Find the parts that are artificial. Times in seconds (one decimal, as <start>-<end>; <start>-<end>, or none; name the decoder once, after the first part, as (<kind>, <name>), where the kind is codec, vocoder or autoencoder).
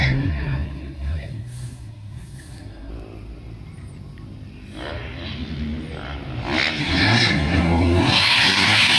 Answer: 0.0-2.9 (codec, SNAC); 6.8-9.0